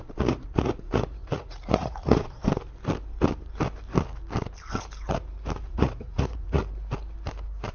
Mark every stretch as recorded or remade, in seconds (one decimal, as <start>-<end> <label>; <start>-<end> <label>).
0.0-2.4 remade; 2.4-5.7 recorded; 5.7-6.6 remade; 6.6-7.7 recorded